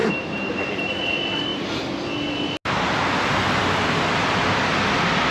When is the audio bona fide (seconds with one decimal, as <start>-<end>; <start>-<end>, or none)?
0.7-5.3